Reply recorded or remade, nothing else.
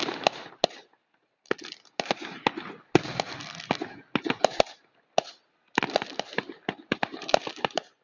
recorded